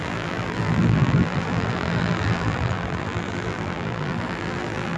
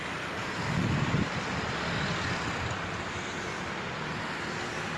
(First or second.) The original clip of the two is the second